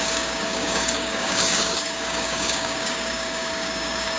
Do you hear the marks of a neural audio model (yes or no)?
yes